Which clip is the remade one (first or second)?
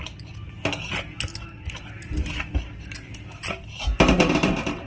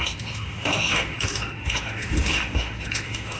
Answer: second